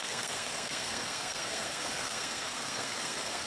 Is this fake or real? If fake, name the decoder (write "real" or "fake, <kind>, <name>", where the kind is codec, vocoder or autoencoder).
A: fake, codec, SNAC